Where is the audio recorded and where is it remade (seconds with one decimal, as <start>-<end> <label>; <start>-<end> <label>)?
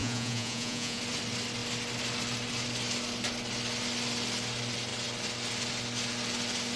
0.0-1.0 remade; 1.0-6.8 recorded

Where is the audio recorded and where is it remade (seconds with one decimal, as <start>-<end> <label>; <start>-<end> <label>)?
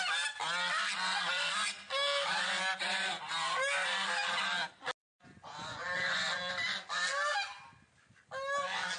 0.0-5.0 recorded; 5.0-6.5 remade; 6.5-9.0 recorded